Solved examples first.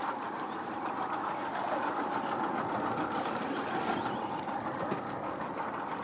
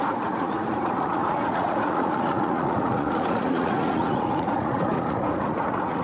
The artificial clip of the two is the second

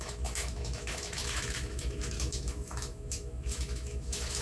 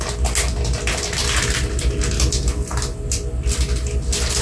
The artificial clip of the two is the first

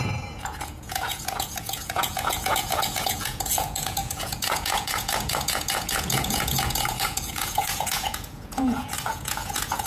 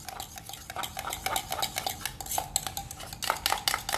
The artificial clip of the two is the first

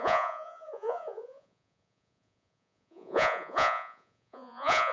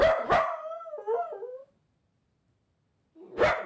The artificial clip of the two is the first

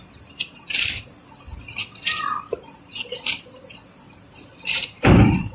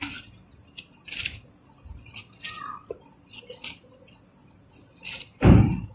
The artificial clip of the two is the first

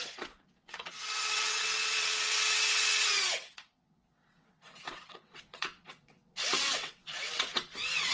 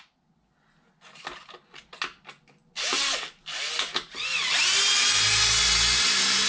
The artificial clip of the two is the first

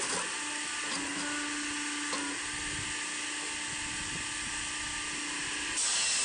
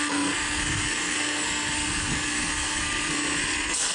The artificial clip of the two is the second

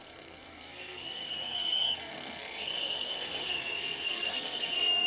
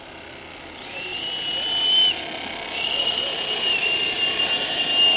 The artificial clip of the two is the first